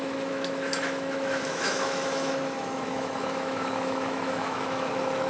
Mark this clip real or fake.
fake